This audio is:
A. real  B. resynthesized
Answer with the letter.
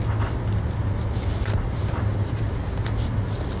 A